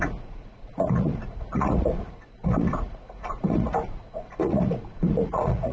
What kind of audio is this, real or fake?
fake